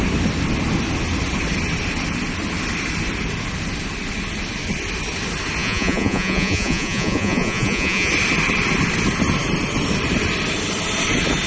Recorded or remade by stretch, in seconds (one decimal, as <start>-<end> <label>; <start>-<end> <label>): 0.0-5.6 recorded; 5.6-8.1 remade; 8.1-11.5 recorded